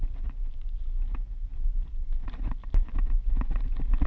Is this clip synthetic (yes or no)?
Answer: no